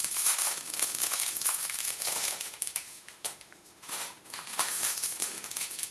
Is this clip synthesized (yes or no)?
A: yes